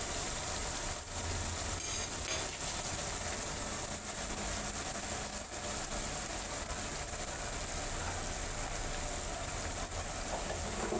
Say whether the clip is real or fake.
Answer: real